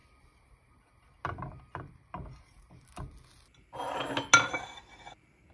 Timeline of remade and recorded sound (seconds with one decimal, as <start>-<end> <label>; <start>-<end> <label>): 0.0-5.5 recorded